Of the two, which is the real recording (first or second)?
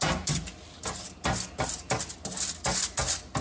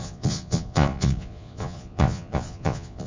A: first